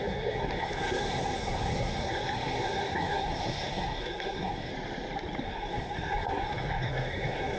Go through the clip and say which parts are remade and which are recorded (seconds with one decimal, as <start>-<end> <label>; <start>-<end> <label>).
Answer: 0.0-4.7 remade; 4.7-5.4 recorded; 5.4-7.6 remade